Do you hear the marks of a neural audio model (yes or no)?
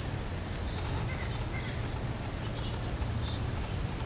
no